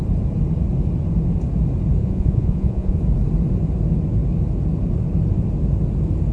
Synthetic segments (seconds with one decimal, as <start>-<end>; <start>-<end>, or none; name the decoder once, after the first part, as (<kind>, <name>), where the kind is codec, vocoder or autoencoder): 2.0-3.0 (vocoder, Vocos)